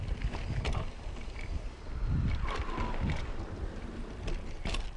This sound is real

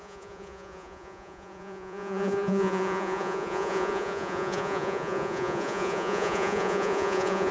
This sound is fake